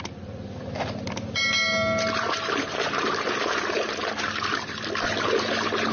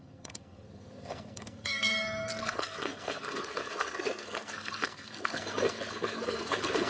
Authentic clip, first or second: first